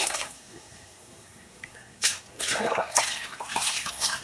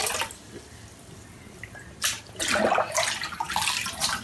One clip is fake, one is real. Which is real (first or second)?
second